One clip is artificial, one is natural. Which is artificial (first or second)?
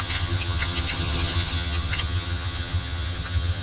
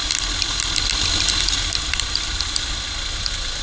first